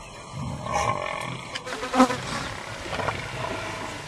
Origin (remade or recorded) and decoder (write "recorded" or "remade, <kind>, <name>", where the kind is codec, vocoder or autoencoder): recorded